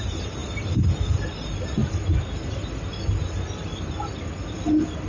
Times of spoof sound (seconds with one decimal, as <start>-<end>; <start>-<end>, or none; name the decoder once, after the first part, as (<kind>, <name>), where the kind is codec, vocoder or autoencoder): 0.0-1.8 (vocoder, BigVGAN v2)